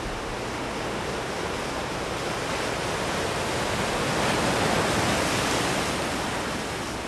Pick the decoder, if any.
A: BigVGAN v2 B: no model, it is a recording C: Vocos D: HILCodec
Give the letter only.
B